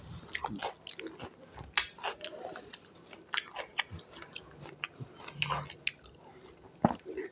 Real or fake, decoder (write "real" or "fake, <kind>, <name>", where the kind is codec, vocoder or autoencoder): real